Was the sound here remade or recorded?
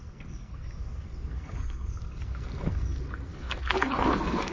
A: remade